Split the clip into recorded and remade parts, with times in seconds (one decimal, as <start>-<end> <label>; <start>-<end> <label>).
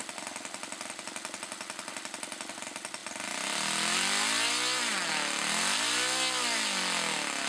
0.0-7.5 recorded